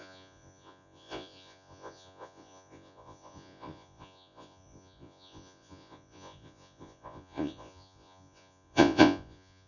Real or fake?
fake